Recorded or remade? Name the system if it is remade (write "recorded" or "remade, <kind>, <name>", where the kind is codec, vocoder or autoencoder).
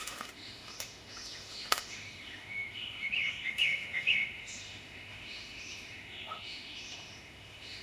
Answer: remade, autoencoder, DAC-VAE